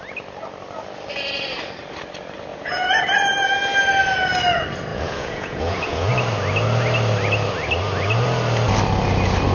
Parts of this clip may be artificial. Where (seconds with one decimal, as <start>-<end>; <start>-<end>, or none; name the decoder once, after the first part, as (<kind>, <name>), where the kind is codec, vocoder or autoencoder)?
2.5-3.0 (vocoder, Vocos); 4.9-6.1